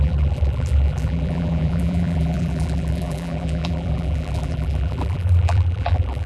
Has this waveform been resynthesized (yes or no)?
yes